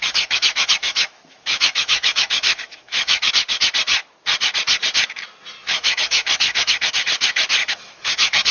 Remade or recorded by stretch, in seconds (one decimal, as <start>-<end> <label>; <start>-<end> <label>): 0.0-3.3 remade; 3.3-5.6 recorded; 5.6-6.9 remade; 6.9-7.6 recorded; 7.6-8.5 remade